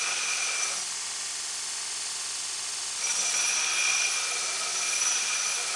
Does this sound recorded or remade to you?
recorded